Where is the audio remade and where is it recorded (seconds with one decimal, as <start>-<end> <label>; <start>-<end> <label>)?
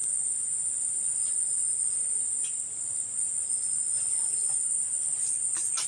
0.0-5.9 recorded